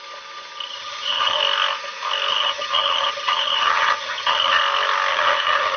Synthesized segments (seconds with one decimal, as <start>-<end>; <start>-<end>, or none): 0.7-1.4; 2.3-4.6; 5.1-5.8